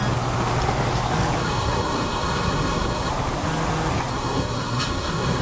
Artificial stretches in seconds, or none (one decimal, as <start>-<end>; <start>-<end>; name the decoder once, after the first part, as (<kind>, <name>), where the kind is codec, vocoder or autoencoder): 1.4-3.1 (codec, SNAC); 4.1-5.4